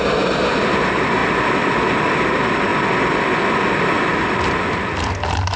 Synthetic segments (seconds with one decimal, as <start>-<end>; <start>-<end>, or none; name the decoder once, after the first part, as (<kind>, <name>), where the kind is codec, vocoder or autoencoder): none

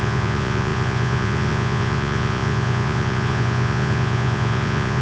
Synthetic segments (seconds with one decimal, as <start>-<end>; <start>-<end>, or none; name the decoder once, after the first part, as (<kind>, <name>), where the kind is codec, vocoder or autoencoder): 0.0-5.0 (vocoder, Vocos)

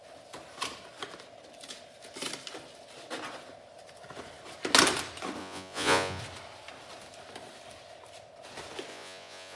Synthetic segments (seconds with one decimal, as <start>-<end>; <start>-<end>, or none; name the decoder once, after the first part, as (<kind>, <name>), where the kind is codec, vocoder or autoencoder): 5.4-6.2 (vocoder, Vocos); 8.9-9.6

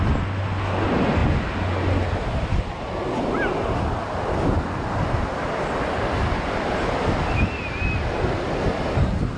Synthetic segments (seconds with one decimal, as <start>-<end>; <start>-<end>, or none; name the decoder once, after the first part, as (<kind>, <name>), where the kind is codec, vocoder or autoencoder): none

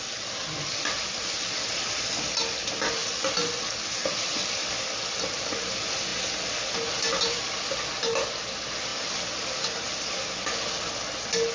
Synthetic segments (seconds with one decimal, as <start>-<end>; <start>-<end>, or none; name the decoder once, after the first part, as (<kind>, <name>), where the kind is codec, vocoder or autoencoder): none

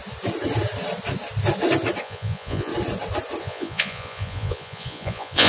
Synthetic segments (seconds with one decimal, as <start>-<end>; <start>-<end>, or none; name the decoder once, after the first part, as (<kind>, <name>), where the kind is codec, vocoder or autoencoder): 2.0-2.7 (vocoder, Vocos); 3.4-5.5

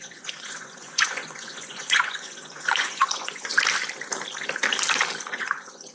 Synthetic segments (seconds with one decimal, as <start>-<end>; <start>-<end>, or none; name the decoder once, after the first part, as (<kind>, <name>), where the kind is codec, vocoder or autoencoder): 0.0-3.5 (vocoder, Vocos); 5.3-5.9

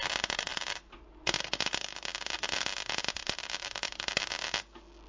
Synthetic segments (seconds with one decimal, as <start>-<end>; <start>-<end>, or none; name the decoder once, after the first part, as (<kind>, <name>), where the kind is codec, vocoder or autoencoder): none